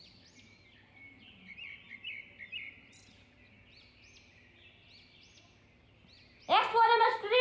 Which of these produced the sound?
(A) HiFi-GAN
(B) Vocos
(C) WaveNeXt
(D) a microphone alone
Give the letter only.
D